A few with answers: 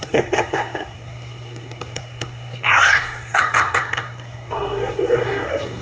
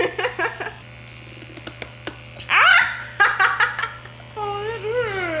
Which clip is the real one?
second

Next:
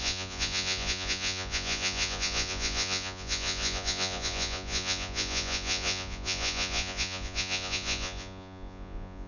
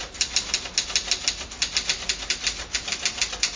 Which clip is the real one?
second